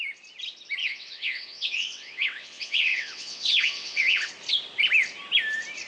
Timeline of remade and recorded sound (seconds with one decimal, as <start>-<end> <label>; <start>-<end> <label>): 0.0-0.8 recorded; 0.8-4.3 remade; 4.3-5.9 recorded